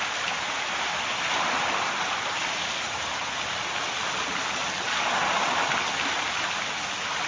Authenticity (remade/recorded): recorded